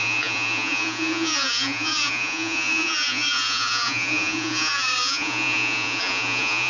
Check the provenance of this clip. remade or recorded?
remade